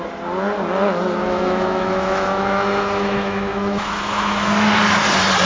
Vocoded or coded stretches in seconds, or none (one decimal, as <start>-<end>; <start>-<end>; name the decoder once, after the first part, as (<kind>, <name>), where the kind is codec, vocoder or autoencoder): 1.2-4.5 (autoencoder, DAC-VAE)